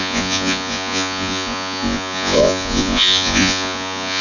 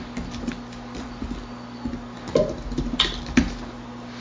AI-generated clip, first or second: first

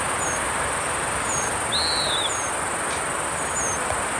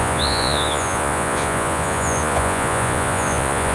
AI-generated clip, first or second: second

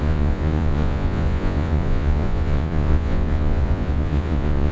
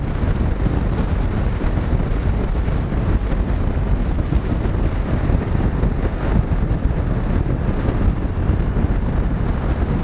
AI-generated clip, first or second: first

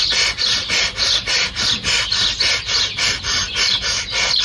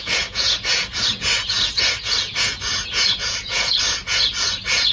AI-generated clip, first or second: second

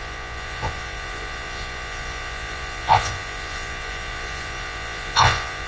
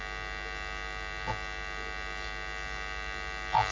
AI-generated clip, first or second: first